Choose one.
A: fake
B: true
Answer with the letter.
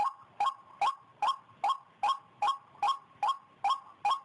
B